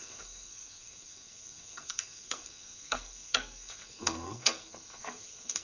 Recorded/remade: remade